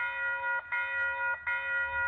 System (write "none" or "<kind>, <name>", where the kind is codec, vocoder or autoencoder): none